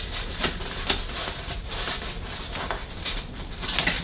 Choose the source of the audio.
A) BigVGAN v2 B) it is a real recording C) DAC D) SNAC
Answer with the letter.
A